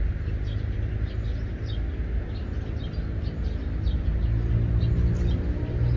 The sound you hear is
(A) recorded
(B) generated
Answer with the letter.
A